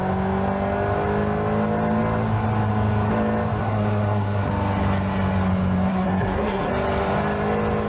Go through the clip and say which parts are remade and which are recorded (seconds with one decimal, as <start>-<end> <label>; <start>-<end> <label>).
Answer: 0.0-3.6 recorded; 3.6-4.5 remade; 4.5-5.9 recorded; 5.9-6.7 remade; 6.7-7.9 recorded

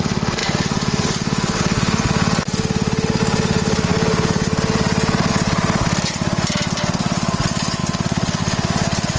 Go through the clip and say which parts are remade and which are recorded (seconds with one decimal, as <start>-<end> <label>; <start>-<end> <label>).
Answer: 0.0-9.2 recorded

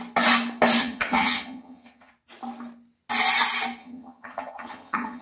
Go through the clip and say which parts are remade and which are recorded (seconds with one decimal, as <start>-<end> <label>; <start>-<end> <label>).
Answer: 0.0-0.8 recorded; 0.8-2.1 remade; 2.1-3.8 recorded; 3.8-5.2 remade

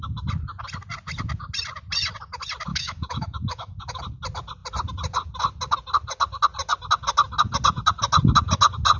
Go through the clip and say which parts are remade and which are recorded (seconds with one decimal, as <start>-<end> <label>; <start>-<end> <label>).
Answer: 0.0-2.7 recorded; 2.7-4.0 remade; 4.0-9.0 recorded

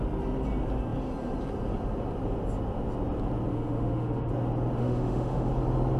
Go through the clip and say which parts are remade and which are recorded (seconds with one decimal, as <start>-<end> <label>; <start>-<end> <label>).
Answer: 0.0-3.5 recorded; 3.5-4.3 remade; 4.3-4.8 recorded; 4.8-5.5 remade; 5.5-6.0 recorded

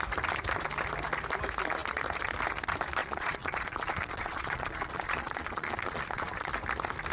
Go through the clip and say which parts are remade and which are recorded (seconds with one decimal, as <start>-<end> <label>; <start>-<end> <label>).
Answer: 0.0-3.0 recorded; 3.0-6.5 remade; 6.5-7.1 recorded

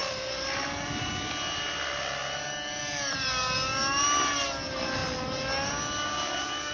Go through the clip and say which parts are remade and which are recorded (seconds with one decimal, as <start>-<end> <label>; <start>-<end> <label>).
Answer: 0.0-1.1 remade; 1.1-2.2 recorded; 2.2-3.3 remade; 3.3-6.7 recorded

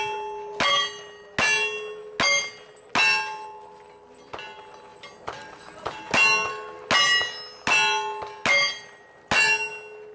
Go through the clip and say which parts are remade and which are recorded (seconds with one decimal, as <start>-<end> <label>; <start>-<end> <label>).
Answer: 0.0-10.1 recorded